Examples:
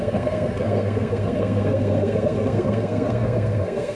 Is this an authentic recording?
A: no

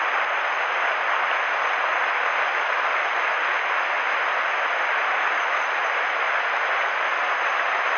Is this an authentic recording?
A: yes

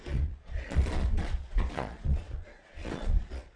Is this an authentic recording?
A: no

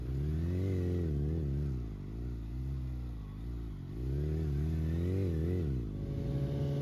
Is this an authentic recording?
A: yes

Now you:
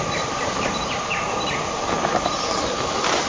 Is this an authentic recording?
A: yes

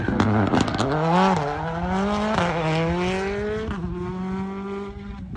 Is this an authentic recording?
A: yes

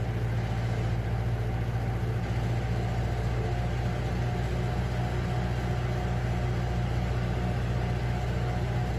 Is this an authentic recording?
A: yes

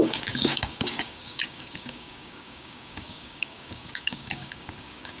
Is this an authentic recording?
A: no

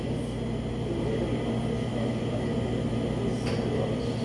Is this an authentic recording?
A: yes